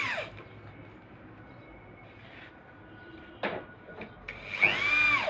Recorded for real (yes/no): yes